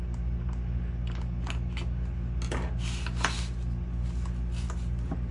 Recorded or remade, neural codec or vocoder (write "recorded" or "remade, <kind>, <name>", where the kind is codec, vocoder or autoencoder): recorded